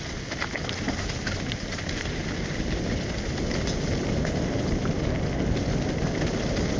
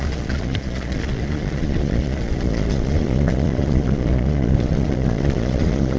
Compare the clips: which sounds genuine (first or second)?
first